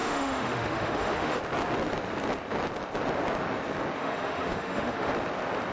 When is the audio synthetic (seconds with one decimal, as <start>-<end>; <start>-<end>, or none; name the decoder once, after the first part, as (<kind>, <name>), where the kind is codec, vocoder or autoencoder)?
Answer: 0.0-1.4 (autoencoder, DAC-VAE); 4.0-5.1